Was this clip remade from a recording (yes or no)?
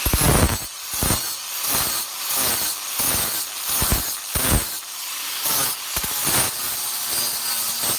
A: no